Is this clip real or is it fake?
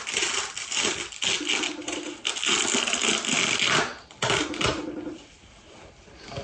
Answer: real